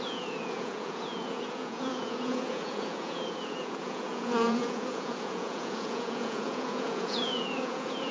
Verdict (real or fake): fake